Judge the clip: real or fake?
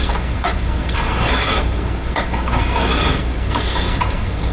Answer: fake